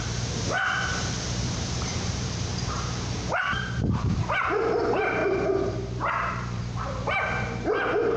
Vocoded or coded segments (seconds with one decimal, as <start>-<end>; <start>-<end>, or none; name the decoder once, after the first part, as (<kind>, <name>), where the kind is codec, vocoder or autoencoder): 0.0-5.2 (vocoder, BigVGAN v2); 6.3-8.2